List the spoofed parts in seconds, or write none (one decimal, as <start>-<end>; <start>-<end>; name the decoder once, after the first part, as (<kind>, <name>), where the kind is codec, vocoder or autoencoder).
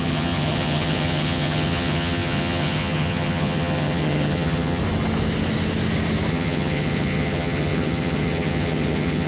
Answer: 0.0-4.8 (vocoder, HiFi-GAN); 6.3-9.3